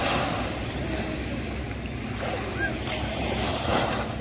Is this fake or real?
real